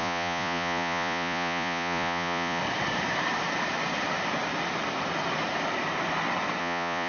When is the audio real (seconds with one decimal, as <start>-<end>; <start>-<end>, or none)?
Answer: 2.6-6.6